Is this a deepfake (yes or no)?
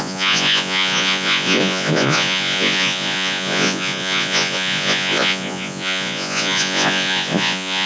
yes